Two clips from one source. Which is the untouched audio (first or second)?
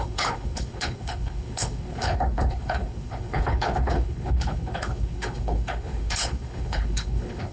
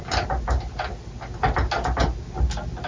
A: second